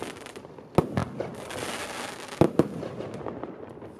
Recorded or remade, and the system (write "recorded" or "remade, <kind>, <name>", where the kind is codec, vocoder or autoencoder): recorded